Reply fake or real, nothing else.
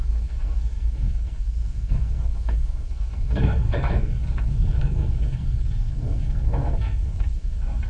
fake